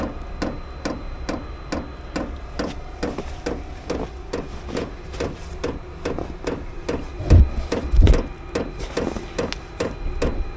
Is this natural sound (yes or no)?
yes